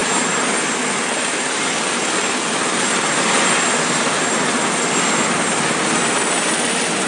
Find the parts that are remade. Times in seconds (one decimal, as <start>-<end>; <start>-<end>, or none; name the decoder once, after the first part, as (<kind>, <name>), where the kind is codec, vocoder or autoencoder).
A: none